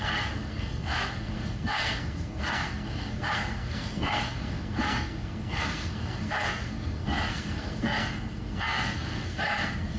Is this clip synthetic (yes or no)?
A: yes